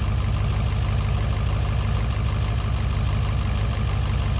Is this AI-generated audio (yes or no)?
no